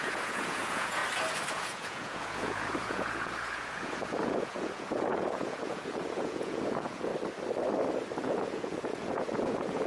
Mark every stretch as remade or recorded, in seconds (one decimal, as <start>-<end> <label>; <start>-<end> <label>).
0.0-1.0 remade; 1.0-1.5 recorded; 1.5-7.1 remade; 7.1-8.2 recorded; 8.2-9.9 remade